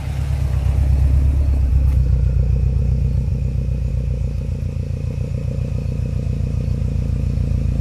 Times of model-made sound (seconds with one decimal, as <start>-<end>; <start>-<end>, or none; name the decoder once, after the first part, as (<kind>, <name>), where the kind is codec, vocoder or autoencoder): none